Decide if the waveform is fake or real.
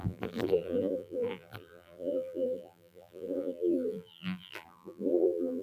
fake